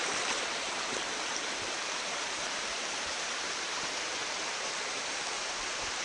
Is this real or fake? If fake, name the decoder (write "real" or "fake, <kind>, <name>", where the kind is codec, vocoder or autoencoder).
fake, vocoder, BigVGAN v2